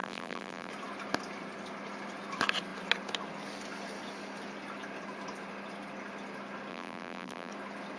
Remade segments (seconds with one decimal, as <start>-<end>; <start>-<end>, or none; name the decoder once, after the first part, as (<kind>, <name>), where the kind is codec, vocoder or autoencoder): 0.0-0.7 (vocoder, BigVGAN v2); 6.7-7.5